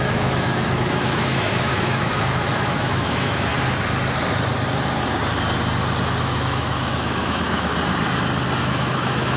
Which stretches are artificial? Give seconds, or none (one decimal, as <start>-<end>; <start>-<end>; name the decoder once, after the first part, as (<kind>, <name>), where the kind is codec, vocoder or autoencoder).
0.0-3.5 (autoencoder, DAC-VAE); 6.2-7.7; 8.6-9.4